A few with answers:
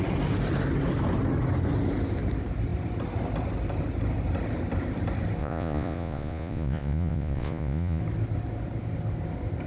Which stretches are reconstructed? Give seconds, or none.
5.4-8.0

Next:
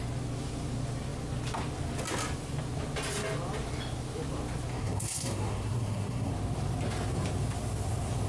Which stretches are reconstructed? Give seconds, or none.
4.7-6.3